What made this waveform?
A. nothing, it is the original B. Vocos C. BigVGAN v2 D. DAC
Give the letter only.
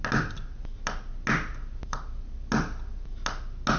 A